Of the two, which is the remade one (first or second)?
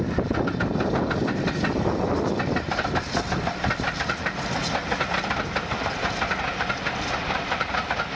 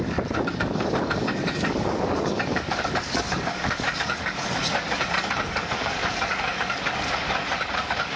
second